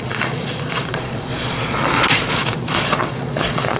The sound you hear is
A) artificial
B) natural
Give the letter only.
A